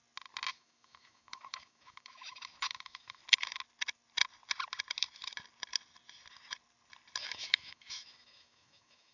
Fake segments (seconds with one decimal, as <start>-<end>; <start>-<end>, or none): 0.5-3.2; 7.2-9.1